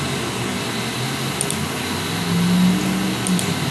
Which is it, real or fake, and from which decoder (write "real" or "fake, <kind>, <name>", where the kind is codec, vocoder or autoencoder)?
real